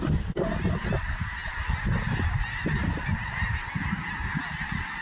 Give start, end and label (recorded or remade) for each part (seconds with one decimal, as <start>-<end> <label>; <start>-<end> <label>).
0.0-5.0 recorded